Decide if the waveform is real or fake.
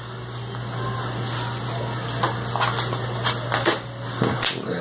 real